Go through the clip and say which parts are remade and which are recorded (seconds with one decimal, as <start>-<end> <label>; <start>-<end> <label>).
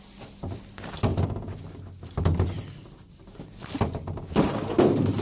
0.0-5.2 recorded